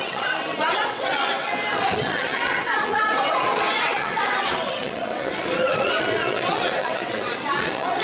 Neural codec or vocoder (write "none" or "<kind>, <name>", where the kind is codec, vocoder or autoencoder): vocoder, WaveNeXt